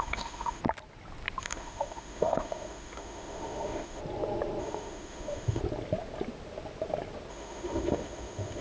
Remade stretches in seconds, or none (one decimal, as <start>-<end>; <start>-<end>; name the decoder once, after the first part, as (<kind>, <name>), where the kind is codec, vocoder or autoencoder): 0.0-0.6 (autoencoder, DAC-VAE); 1.4-4.0; 4.6-5.6; 7.3-8.6